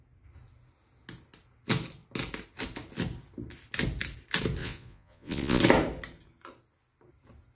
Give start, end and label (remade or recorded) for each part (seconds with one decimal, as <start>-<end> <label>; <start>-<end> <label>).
0.0-4.6 recorded; 4.6-5.6 remade; 5.6-7.5 recorded